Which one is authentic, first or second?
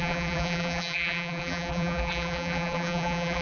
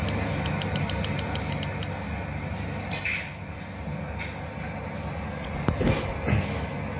second